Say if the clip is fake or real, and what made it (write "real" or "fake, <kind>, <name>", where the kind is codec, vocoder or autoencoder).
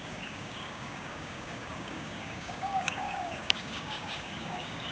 fake, codec, DAC